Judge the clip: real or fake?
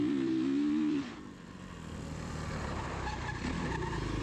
fake